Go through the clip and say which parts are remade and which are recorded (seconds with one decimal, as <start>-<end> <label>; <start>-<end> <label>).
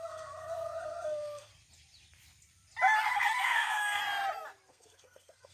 0.0-1.5 remade; 1.5-3.0 recorded; 3.0-4.0 remade; 4.0-4.7 recorded; 4.7-5.5 remade